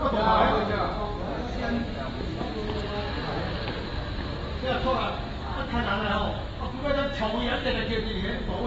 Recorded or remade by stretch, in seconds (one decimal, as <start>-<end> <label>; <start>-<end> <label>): 0.0-5.3 recorded; 5.3-7.5 remade; 7.5-8.7 recorded